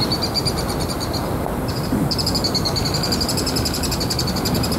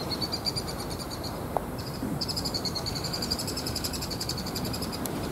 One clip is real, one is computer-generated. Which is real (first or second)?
first